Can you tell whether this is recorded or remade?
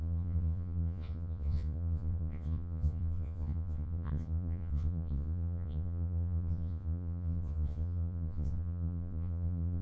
remade